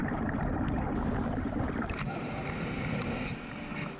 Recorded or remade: recorded